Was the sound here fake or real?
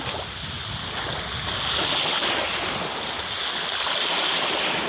real